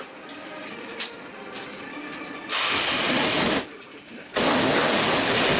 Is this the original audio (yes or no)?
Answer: yes